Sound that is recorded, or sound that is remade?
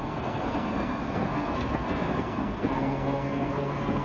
remade